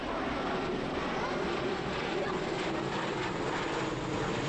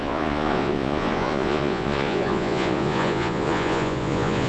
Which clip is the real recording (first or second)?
first